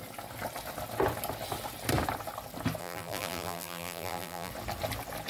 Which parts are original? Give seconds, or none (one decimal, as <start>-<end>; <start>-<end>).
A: 0.0-2.8; 4.5-5.3